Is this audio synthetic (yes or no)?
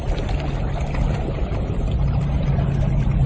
no